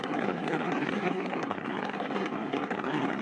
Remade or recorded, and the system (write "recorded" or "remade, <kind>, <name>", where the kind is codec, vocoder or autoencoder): remade, codec, SNAC